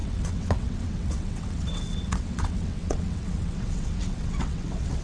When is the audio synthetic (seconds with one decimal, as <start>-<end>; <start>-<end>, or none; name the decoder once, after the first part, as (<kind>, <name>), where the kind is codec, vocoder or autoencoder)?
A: 0.0-5.0 (vocoder, WaveNeXt)